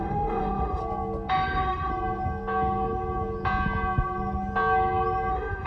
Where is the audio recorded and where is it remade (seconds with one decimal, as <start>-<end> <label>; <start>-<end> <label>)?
0.0-0.8 remade; 0.8-1.3 recorded; 1.3-1.9 remade; 1.9-5.3 recorded; 5.3-5.7 remade